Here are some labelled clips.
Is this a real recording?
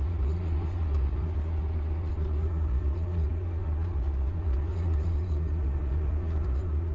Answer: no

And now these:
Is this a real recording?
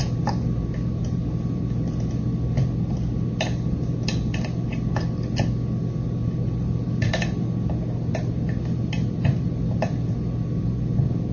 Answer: yes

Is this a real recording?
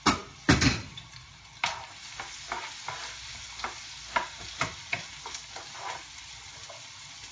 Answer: yes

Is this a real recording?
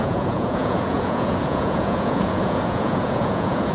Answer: no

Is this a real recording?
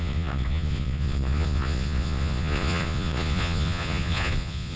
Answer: no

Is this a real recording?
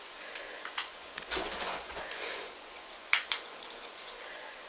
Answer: no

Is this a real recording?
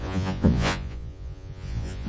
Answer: no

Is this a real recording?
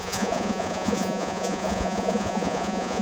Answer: no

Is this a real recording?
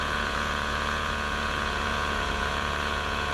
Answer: no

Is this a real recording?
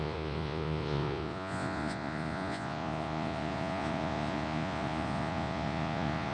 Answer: no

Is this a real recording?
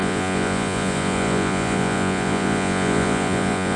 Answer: no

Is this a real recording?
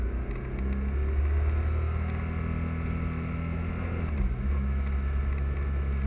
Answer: yes